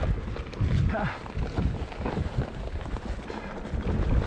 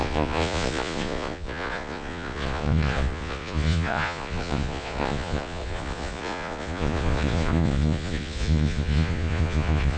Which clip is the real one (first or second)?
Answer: first